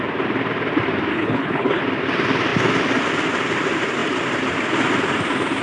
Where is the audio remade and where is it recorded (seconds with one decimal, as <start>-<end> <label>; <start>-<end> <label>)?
0.0-1.1 recorded; 1.1-1.8 remade; 1.8-5.6 recorded